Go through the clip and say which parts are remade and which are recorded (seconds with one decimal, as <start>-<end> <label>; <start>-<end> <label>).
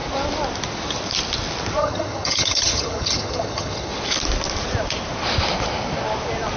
0.0-1.8 recorded; 1.8-3.9 remade; 3.9-6.6 recorded